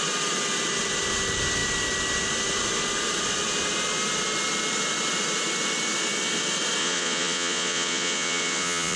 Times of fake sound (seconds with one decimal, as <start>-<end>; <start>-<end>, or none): 6.8-9.0